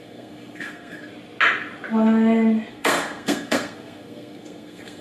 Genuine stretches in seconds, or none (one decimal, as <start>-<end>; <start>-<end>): 1.1-2.7